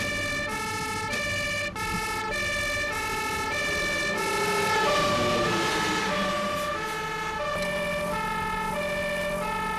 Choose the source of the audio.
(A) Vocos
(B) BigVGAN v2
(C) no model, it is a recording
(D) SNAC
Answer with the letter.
C